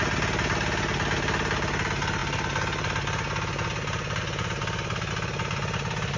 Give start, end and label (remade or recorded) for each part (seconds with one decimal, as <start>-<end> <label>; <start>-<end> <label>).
0.0-6.2 recorded